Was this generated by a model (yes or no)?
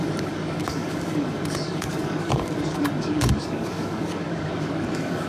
yes